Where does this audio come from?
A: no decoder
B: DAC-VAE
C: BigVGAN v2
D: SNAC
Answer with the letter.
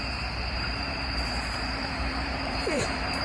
C